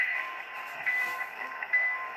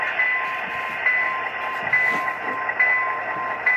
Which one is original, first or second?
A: second